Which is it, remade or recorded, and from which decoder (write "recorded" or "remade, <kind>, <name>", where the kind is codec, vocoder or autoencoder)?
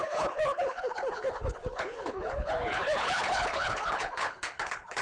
remade, codec, HILCodec